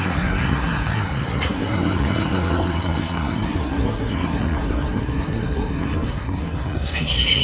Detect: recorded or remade remade